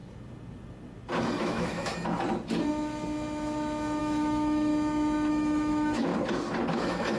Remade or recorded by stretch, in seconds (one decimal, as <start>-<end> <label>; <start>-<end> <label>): 0.0-1.4 recorded; 1.4-1.9 remade; 1.9-4.0 recorded; 4.0-4.7 remade; 4.7-5.3 recorded; 5.3-6.1 remade; 6.1-6.7 recorded; 6.7-7.2 remade